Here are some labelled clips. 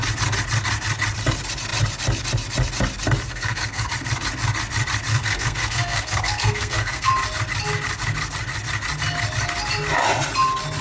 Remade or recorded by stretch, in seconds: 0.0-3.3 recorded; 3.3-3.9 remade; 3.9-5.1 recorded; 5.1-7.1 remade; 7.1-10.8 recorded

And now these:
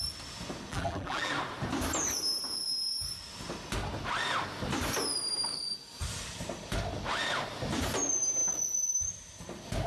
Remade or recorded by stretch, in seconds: 0.0-0.7 recorded; 0.7-1.3 remade; 1.3-9.9 recorded

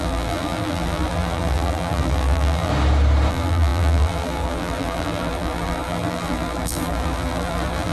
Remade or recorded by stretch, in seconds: 0.0-2.7 remade; 2.7-3.3 recorded; 3.3-7.9 remade

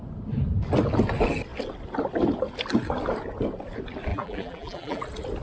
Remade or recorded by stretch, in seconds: 0.0-4.1 recorded; 4.1-5.0 remade; 5.0-5.4 recorded